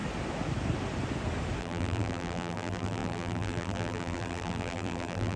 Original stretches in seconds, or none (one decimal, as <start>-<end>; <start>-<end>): 0.0-1.6